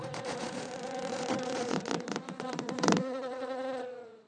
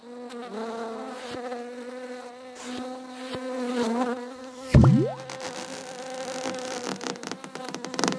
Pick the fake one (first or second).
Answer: first